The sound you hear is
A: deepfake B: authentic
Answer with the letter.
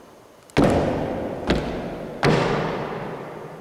B